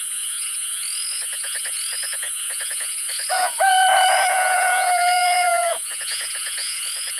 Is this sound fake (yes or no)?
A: yes